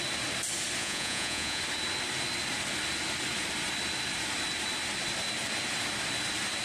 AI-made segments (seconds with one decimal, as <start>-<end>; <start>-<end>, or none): 0.8-1.6